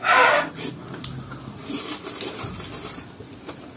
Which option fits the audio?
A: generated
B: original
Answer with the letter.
B